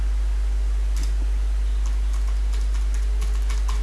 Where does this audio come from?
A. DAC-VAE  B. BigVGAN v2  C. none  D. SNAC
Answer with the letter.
C